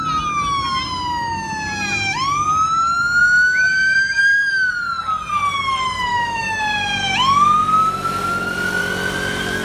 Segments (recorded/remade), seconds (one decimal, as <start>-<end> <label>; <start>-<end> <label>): 0.0-3.2 recorded; 3.2-4.7 remade; 4.7-6.1 recorded; 6.1-6.6 remade; 6.6-9.6 recorded